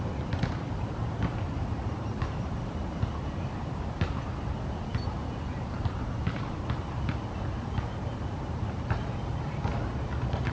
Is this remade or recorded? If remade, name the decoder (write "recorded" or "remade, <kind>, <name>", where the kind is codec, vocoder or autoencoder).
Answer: recorded